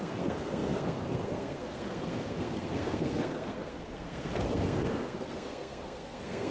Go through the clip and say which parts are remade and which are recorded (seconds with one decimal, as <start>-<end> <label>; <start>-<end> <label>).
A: 0.0-6.5 remade